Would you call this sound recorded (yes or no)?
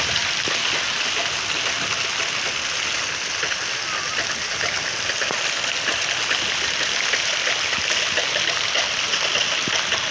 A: yes